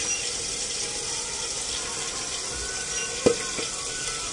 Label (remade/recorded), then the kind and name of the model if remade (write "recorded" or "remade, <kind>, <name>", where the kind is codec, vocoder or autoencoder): recorded